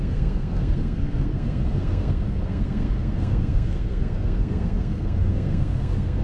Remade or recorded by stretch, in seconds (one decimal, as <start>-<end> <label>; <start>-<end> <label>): 0.0-6.2 remade